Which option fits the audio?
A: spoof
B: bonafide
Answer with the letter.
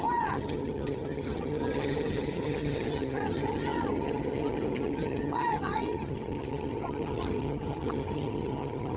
A